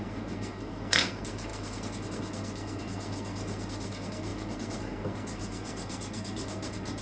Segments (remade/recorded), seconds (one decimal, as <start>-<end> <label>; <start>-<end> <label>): 0.0-7.0 remade

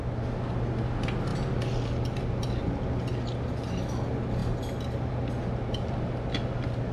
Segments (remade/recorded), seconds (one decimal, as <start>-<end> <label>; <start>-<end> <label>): 0.0-6.9 recorded

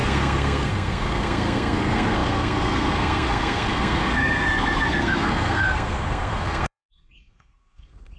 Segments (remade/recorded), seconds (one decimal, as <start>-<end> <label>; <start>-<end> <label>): 0.0-8.2 remade

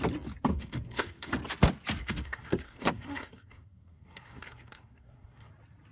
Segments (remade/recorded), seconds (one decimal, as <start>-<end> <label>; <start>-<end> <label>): 0.0-0.5 recorded; 0.5-1.3 remade; 1.3-2.0 recorded; 2.0-5.5 remade; 5.5-5.9 recorded

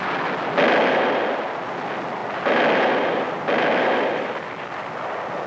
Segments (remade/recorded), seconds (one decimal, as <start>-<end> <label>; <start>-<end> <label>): 0.0-5.5 recorded

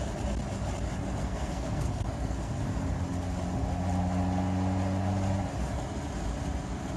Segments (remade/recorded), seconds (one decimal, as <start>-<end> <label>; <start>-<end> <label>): 0.0-1.2 recorded; 1.2-2.9 remade; 2.9-7.0 recorded

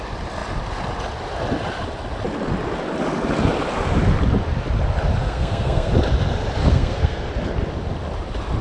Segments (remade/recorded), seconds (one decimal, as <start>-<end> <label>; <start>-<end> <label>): 0.0-5.2 recorded; 5.2-5.9 remade; 5.9-6.6 recorded; 6.6-7.3 remade; 7.3-8.6 recorded

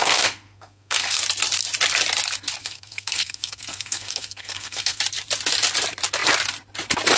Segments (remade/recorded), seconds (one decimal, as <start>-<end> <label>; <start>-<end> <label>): 0.0-1.2 remade; 1.2-2.6 recorded; 2.6-5.0 remade; 5.0-7.2 recorded